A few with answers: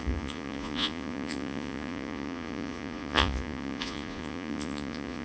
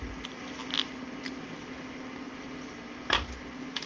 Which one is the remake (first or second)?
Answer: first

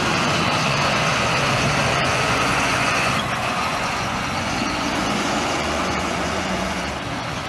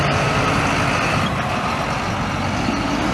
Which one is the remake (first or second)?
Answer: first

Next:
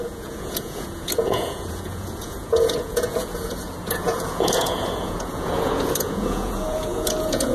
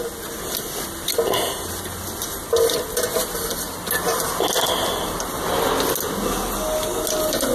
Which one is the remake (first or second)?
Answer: first